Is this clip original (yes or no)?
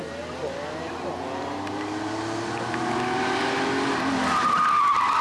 yes